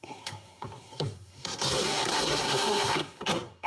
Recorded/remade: remade